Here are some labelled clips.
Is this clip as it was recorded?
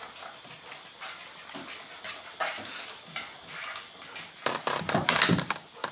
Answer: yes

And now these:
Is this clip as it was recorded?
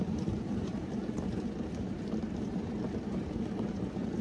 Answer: no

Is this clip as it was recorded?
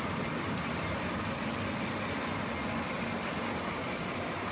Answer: yes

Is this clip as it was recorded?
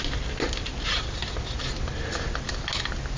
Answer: yes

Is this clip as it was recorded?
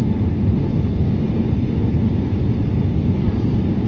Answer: no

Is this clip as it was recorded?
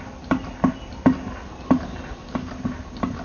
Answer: yes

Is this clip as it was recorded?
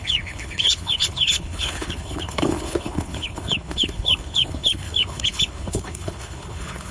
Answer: no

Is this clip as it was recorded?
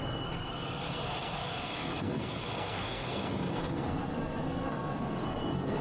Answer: no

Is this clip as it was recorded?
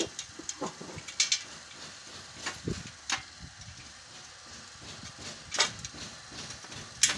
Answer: yes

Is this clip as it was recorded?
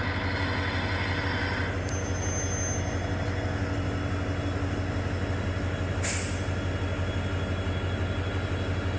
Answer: yes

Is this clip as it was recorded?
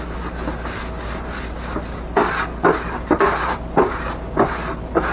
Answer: yes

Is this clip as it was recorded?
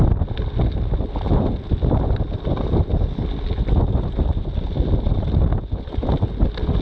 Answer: yes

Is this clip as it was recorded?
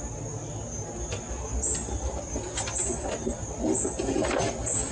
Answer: yes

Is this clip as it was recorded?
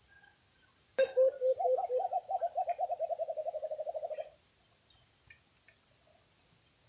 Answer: yes